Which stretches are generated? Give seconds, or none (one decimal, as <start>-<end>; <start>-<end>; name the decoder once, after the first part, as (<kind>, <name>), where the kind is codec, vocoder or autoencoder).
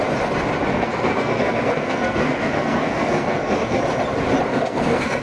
0.7-3.8 (codec, SNAC); 4.5-5.2